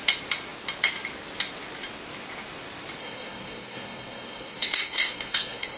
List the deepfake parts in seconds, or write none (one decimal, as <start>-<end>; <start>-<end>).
3.0-5.8